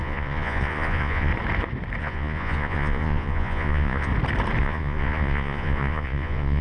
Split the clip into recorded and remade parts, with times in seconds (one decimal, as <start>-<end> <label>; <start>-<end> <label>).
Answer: 0.0-1.3 remade; 1.3-2.0 recorded; 2.0-4.1 remade; 4.1-4.6 recorded; 4.6-6.6 remade